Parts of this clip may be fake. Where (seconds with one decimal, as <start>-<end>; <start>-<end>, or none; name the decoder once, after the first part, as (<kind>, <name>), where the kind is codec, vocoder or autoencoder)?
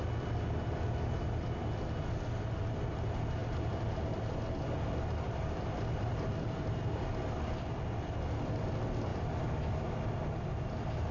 3.4-7.8 (vocoder, BigVGAN v2)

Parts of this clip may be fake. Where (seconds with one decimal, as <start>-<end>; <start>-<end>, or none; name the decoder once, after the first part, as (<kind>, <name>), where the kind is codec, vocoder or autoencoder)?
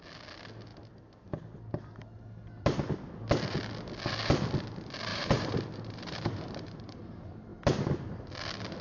0.7-1.4 (vocoder, BigVGAN v2); 5.1-6.8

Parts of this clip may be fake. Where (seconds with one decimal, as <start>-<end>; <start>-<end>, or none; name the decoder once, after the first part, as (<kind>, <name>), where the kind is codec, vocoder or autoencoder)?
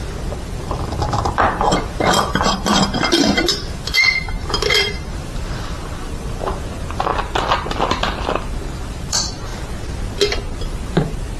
0.0-7.1 (vocoder, BigVGAN v2); 8.9-9.5; 11.0-11.4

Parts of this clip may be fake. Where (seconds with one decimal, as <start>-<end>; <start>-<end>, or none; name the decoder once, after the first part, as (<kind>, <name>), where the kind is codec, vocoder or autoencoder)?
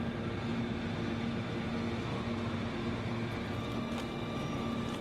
0.5-1.1 (vocoder, BigVGAN v2)